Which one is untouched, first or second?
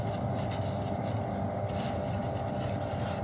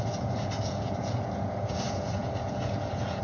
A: first